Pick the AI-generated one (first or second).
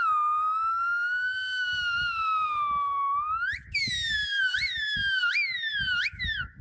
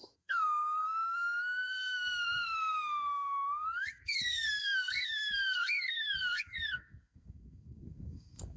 second